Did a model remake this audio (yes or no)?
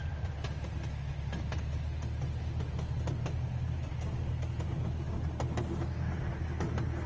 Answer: no